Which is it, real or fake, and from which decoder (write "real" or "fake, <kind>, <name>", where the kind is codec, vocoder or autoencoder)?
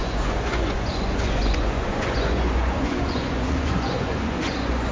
fake, vocoder, Vocos